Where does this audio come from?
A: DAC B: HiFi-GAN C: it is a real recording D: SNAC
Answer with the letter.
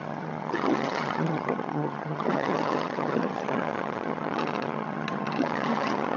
B